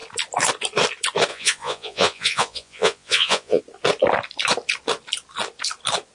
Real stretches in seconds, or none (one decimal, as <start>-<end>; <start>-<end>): 0.0-1.3; 3.6-6.1